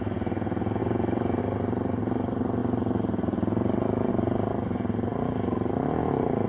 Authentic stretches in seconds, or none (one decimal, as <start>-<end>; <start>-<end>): 0.0-6.5